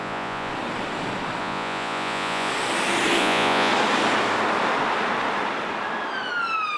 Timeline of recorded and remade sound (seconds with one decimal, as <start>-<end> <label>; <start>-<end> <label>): 0.0-0.5 remade; 0.5-1.4 recorded; 1.4-2.5 remade; 2.5-3.2 recorded; 3.2-3.7 remade; 3.7-6.8 recorded